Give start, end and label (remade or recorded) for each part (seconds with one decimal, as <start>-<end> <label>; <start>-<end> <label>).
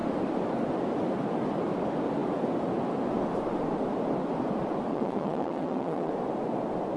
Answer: 0.0-4.9 recorded; 4.9-6.1 remade; 6.1-7.0 recorded